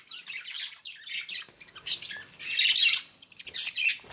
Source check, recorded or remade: recorded